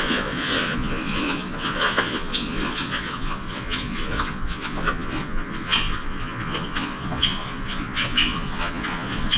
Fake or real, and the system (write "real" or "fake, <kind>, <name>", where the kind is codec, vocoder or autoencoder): fake, vocoder, Vocos